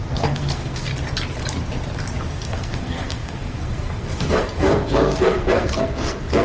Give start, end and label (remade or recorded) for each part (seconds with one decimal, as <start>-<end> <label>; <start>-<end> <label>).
0.0-0.9 remade; 0.9-2.3 recorded; 2.3-6.4 remade